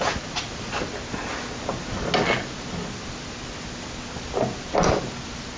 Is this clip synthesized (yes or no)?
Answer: no